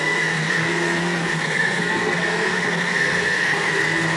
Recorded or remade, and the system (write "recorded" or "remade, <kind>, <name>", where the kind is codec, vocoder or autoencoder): remade, codec, SNAC